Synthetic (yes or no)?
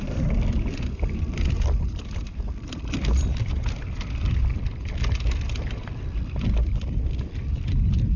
yes